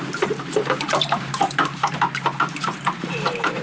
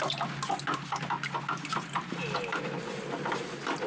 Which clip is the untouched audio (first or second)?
second